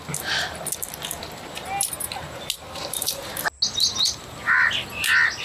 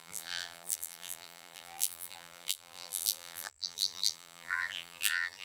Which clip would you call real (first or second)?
first